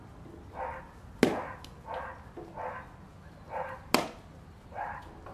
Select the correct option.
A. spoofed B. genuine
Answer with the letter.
B